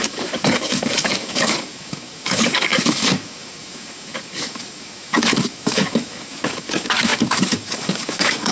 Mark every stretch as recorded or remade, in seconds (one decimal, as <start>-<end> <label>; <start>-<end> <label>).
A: 0.0-8.5 remade